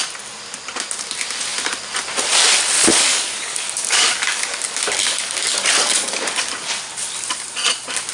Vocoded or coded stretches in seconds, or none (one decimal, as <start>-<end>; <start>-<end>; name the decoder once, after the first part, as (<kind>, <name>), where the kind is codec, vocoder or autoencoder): 2.9-6.3 (codec, DAC)